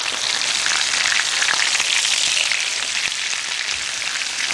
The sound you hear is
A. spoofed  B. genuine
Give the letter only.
B